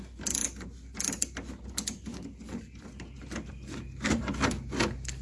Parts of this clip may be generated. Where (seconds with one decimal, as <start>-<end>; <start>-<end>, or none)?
none

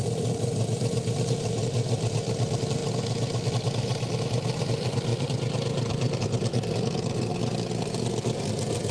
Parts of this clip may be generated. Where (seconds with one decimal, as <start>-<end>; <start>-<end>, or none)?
0.0-2.8; 3.5-7.3; 7.8-8.9